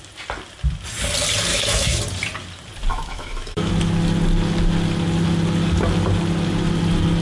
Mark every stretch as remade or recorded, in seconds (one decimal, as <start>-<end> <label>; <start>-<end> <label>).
0.0-1.5 recorded; 1.5-2.0 remade; 2.0-2.9 recorded; 2.9-3.7 remade; 3.7-7.2 recorded